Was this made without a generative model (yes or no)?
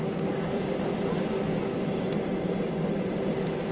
no